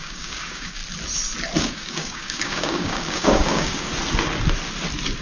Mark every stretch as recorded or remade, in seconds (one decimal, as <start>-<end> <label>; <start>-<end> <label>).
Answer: 0.0-0.8 remade; 0.8-1.6 recorded; 1.6-3.9 remade; 3.9-5.2 recorded